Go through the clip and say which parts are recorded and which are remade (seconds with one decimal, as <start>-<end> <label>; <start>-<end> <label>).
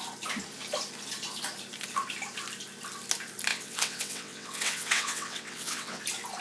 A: 0.0-3.5 recorded; 3.5-6.0 remade; 6.0-6.4 recorded